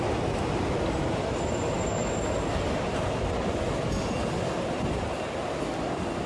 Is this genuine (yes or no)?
yes